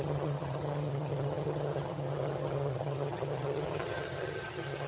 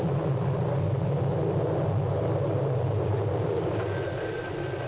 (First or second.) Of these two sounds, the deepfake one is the first